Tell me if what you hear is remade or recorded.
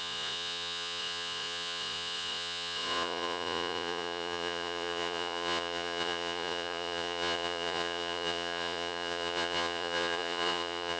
remade